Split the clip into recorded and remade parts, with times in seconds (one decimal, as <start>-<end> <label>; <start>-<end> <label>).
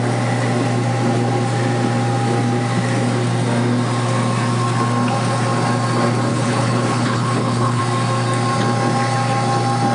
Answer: 0.0-6.3 recorded; 6.3-7.8 remade; 7.8-9.9 recorded